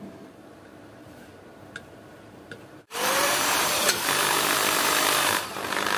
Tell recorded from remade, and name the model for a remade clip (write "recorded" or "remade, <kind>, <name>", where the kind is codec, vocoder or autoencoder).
remade, vocoder, BigVGAN v2